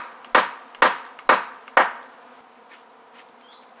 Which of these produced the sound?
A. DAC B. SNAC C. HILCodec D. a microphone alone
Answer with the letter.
D